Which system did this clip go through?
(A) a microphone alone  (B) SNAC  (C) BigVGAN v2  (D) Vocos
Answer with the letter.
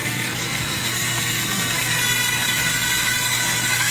B